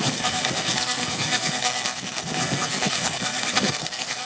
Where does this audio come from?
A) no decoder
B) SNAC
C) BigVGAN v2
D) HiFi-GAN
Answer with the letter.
B